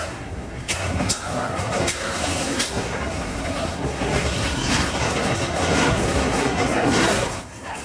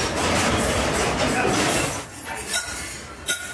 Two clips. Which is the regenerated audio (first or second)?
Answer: first